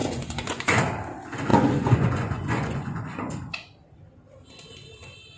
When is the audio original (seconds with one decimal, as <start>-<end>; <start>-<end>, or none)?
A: 0.8-1.5; 3.3-5.4

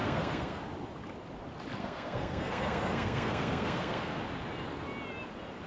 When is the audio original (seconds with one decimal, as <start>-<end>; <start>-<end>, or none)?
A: 0.6-1.8; 4.2-5.7

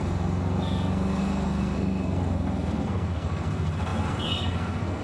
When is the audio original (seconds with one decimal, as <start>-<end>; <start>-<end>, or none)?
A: none

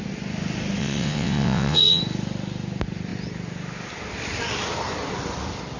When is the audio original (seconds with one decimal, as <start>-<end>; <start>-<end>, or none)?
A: 0.0-0.8; 2.0-5.8

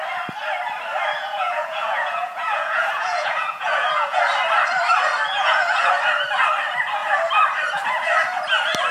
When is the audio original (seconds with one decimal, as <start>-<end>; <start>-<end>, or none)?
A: 0.0-1.2; 4.2-5.3; 5.9-8.9

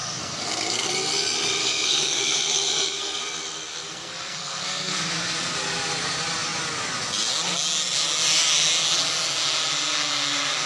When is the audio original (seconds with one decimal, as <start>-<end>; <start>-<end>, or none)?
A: 0.9-1.6; 3.2-3.7; 5.1-10.7